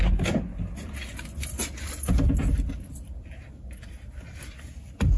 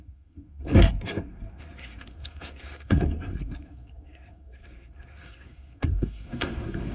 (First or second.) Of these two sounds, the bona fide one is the first